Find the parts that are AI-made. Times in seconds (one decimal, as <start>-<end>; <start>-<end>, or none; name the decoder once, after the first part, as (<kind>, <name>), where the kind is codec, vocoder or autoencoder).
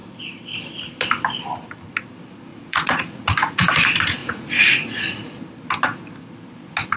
2.5-3.7 (vocoder, Vocos); 4.2-5.4